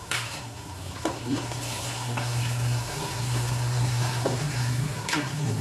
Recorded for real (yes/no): no